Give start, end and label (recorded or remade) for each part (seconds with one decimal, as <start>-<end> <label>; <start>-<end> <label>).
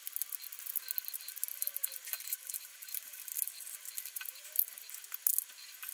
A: 0.0-1.5 recorded; 1.5-4.5 remade; 4.5-5.9 recorded